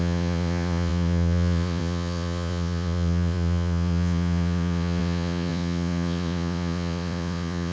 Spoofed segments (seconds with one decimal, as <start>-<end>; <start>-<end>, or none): 0.0-7.7

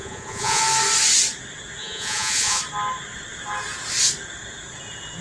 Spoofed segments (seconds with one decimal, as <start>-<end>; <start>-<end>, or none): 0.0-0.6; 1.8-2.6